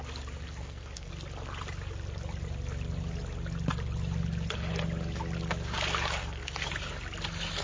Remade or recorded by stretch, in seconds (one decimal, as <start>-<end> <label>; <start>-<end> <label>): 0.0-0.6 recorded; 0.6-1.1 remade; 1.1-6.2 recorded; 6.2-6.7 remade; 6.7-7.6 recorded